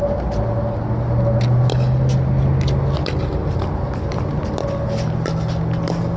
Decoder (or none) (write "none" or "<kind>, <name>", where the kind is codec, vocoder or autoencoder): none